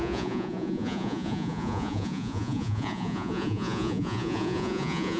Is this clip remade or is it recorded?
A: remade